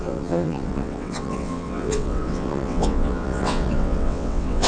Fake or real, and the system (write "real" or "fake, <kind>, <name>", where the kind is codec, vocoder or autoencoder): fake, vocoder, WaveNeXt